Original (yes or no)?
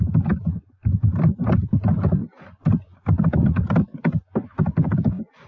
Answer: yes